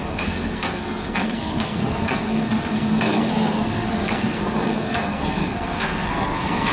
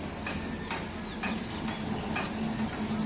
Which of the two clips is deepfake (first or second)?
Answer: first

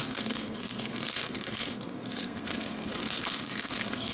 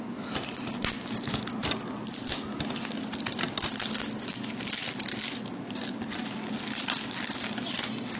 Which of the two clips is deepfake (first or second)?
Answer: first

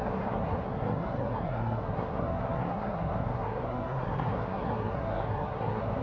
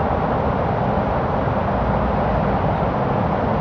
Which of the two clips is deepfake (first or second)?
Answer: first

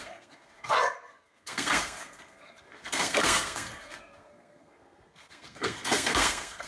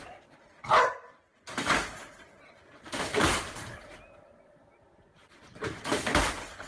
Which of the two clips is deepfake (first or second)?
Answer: first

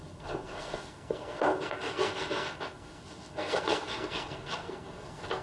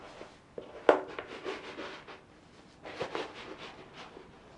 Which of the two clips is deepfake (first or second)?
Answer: first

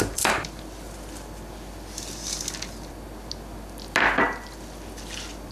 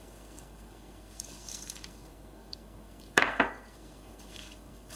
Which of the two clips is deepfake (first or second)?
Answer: second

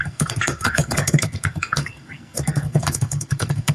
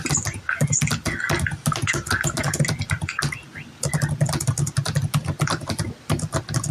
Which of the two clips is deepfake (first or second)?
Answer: first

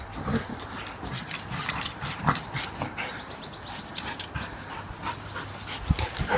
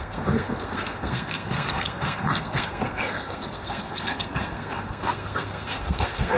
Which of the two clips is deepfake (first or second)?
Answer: second